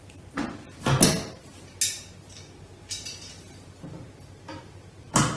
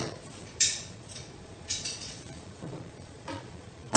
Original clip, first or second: first